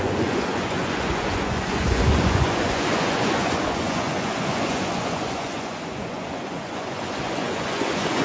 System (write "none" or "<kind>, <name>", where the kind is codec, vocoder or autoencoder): vocoder, Vocos